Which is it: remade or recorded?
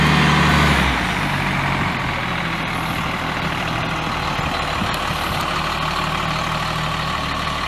recorded